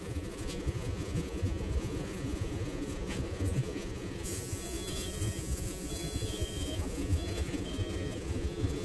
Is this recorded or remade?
remade